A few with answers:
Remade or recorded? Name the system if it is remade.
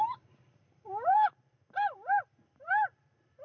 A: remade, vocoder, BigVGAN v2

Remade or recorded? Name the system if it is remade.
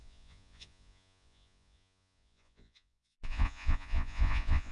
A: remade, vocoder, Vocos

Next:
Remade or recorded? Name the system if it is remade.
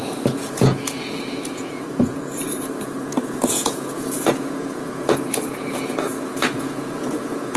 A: remade, vocoder, Vocos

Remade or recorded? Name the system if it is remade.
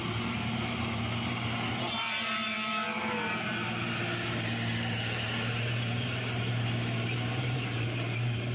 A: remade, vocoder, BigVGAN v2